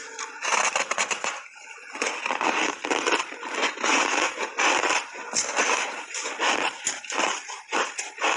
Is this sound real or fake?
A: real